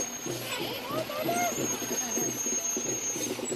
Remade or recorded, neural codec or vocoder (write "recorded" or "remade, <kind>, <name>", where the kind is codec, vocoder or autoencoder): recorded